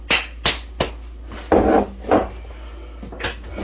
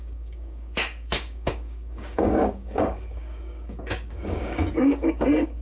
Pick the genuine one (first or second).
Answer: first